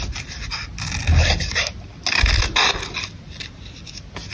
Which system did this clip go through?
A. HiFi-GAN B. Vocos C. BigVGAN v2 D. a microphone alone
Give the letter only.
D